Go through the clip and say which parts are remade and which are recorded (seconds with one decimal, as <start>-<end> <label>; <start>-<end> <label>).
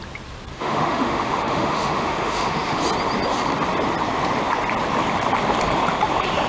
0.0-0.5 recorded; 0.5-2.8 remade; 2.8-6.5 recorded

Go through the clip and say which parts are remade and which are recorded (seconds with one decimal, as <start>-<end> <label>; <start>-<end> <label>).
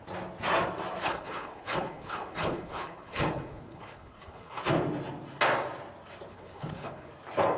0.0-1.0 recorded; 1.0-4.6 remade; 4.6-6.3 recorded; 6.3-7.1 remade; 7.1-7.6 recorded